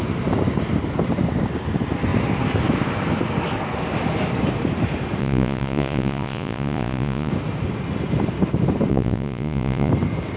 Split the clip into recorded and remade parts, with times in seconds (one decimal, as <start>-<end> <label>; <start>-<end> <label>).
0.0-5.2 recorded; 5.2-7.3 remade; 7.3-8.9 recorded; 8.9-9.9 remade; 9.9-10.4 recorded